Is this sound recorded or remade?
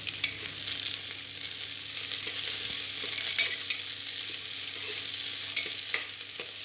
recorded